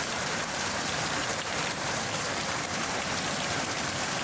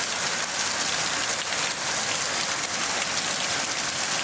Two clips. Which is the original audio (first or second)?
second